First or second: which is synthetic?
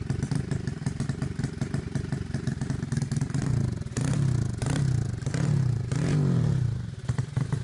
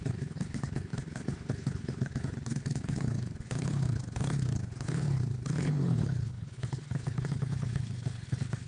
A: second